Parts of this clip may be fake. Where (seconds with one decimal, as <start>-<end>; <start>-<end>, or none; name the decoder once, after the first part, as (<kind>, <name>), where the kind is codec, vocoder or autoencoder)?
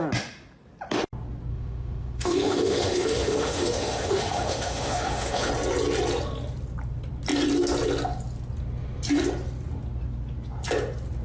1.5-5.5 (autoencoder, DAC-VAE)